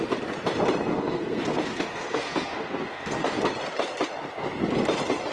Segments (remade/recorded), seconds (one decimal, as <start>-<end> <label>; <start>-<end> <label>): 0.0-0.9 recorded; 0.9-3.4 remade; 3.4-5.3 recorded